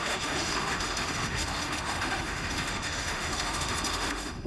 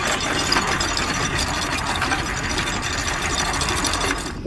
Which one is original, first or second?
second